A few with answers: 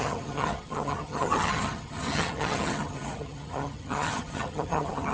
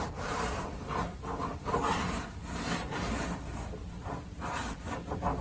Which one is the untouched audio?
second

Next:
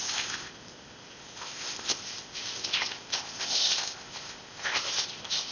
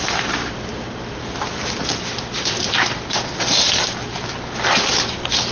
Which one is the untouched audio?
second